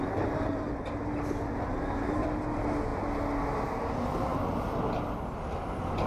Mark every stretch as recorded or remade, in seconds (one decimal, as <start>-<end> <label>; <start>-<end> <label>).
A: 0.0-6.1 recorded